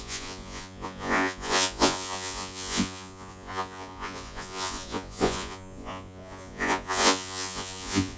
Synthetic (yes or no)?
yes